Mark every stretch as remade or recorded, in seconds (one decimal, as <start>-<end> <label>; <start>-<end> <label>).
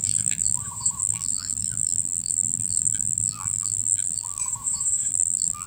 0.0-0.6 remade; 0.6-1.0 recorded; 1.0-4.4 remade; 4.4-5.1 recorded; 5.1-5.7 remade